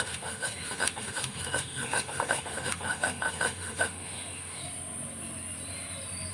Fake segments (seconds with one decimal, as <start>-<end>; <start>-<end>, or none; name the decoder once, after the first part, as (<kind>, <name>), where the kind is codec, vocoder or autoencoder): 0.0-4.6 (autoencoder, DAC-VAE)